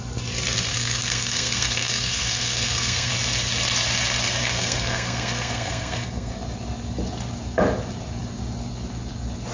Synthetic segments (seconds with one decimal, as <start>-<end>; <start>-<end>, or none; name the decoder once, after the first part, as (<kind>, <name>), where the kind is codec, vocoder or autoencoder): 0.7-3.1 (codec, SNAC); 4.4-6.3